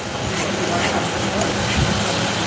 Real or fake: real